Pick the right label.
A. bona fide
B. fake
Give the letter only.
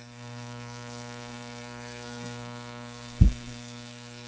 B